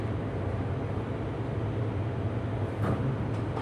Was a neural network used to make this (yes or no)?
no